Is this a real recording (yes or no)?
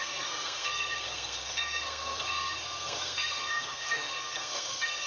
no